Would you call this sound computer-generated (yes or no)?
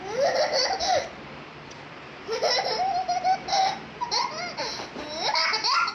yes